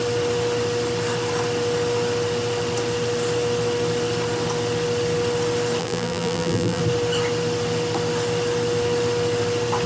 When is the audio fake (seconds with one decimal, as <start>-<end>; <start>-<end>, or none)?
5.8-6.8